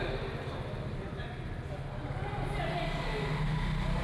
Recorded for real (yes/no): yes